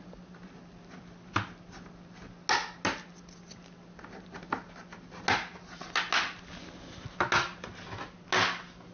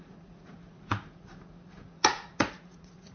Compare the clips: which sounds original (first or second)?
first